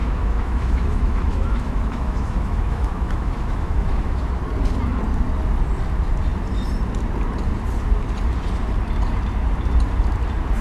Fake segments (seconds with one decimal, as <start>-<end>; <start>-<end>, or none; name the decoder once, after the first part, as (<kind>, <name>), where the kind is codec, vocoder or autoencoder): 0.0-4.3 (autoencoder, DAC-VAE)